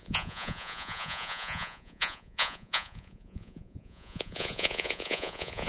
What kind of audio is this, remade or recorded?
remade